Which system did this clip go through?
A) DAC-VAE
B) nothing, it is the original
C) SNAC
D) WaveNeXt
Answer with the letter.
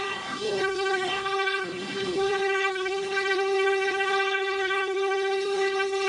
C